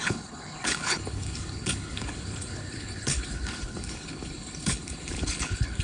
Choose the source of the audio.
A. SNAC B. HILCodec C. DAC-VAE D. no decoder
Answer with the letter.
B